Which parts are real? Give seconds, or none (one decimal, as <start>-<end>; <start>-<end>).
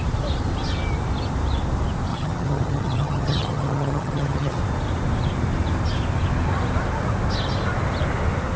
0.0-2.1; 4.6-8.6